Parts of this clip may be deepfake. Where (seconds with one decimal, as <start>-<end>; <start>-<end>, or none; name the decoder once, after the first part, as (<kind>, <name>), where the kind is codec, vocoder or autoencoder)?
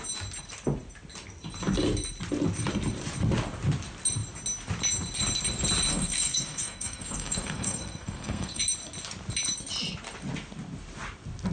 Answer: 5.9-8.6 (codec, SNAC)